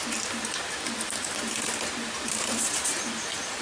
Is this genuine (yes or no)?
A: yes